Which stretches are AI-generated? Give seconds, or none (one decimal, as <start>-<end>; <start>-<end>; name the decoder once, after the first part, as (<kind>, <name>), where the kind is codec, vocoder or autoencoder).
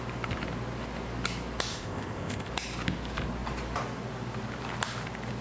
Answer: 1.7-2.5 (codec, ZipCodec)